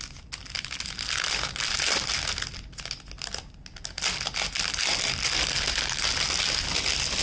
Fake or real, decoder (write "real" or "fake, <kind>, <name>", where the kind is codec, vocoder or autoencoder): real